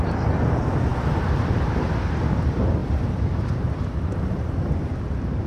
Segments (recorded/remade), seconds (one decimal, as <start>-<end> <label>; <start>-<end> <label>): 0.0-5.5 recorded